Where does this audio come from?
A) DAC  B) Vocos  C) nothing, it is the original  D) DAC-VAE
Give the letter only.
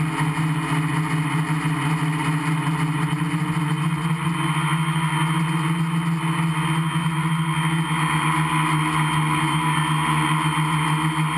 C